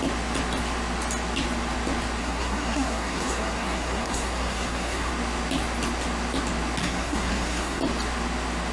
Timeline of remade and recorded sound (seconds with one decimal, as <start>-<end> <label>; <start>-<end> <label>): 0.0-2.2 recorded; 2.2-5.1 remade; 5.1-6.8 recorded; 6.8-7.8 remade; 7.8-8.7 recorded